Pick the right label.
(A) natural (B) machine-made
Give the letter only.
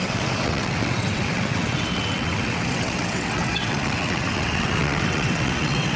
B